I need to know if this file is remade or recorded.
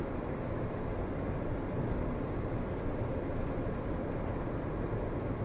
recorded